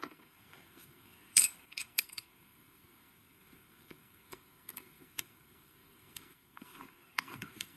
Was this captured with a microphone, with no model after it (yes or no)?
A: no